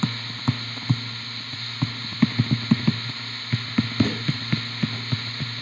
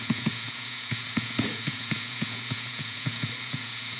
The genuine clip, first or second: first